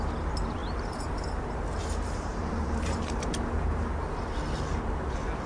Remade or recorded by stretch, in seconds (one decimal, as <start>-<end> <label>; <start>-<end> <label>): 0.0-0.6 recorded; 0.6-3.9 remade; 3.9-5.5 recorded